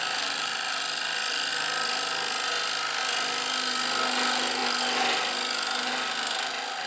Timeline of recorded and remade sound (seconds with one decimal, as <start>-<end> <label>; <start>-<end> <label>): 0.0-6.9 recorded